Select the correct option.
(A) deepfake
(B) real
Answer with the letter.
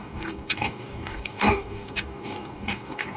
A